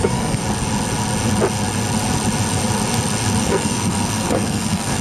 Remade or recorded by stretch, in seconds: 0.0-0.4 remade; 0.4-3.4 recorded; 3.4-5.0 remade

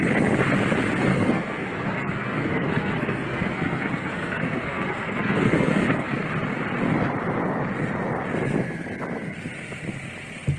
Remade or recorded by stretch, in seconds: 0.0-1.1 recorded; 1.1-6.2 remade; 6.2-10.6 recorded

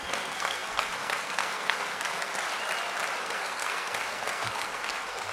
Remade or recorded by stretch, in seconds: 0.0-2.3 remade; 2.3-3.2 recorded; 3.2-5.3 remade

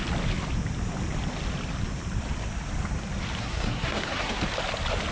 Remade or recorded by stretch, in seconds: 0.0-3.4 recorded; 3.4-4.4 remade; 4.4-5.1 recorded

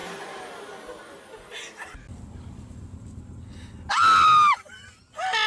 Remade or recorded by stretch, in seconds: 0.0-5.5 recorded